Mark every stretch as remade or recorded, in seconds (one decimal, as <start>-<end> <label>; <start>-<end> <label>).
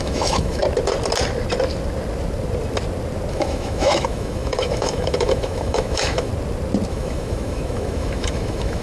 0.0-0.6 remade; 0.6-3.3 recorded; 3.3-6.3 remade; 6.3-6.9 recorded; 6.9-8.8 remade